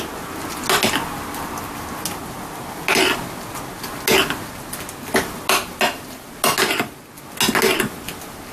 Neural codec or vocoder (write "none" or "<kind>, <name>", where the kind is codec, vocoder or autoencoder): none